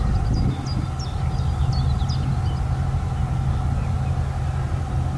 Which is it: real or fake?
real